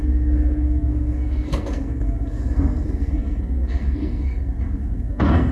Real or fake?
fake